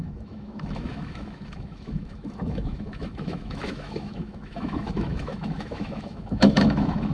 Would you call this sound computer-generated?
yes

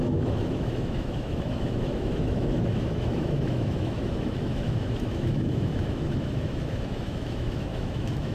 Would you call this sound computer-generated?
yes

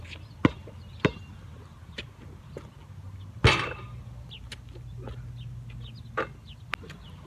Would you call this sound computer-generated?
no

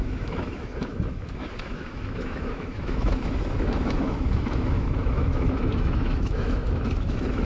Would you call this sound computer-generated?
yes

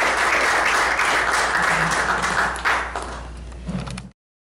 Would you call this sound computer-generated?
no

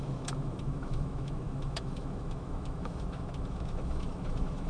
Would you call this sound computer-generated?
yes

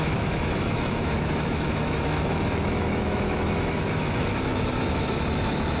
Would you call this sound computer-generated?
yes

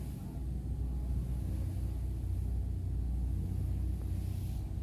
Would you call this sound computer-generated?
no